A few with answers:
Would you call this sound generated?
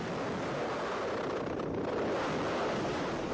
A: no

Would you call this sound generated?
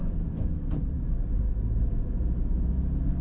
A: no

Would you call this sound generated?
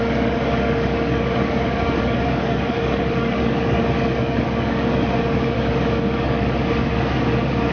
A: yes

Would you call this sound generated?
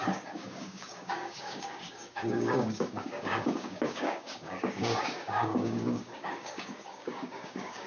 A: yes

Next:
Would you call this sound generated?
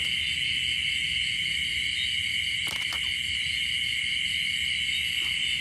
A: no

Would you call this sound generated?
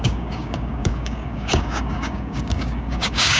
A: yes